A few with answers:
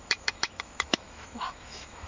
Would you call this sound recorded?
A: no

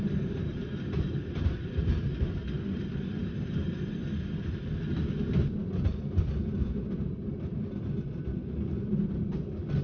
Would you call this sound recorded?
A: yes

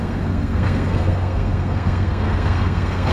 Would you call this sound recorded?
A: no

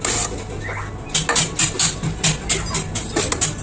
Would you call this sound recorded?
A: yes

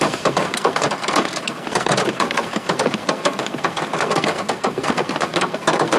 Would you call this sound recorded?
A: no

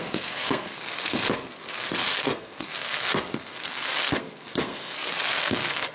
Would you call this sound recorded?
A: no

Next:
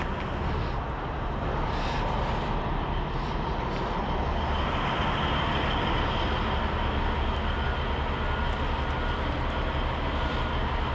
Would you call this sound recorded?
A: yes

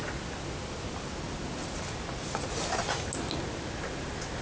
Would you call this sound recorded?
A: yes